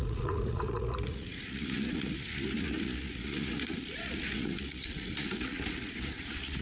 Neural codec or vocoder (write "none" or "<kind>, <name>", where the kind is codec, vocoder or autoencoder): vocoder, Vocos